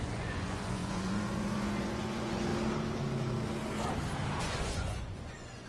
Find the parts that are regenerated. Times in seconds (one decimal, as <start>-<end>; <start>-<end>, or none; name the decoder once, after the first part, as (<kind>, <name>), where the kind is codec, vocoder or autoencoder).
0.0-2.5 (vocoder, Vocos); 4.4-5.7

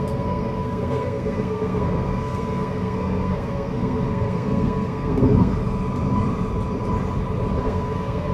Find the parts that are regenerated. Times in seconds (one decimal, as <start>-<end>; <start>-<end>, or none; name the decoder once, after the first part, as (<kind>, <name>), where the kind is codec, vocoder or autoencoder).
0.0-5.6 (codec, SNAC); 7.6-8.3

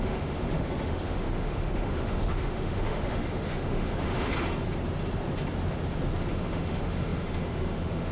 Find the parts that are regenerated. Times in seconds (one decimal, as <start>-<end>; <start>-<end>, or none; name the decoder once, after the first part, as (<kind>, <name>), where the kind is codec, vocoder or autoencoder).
0.0-4.3 (autoencoder, DAC-VAE); 6.3-8.1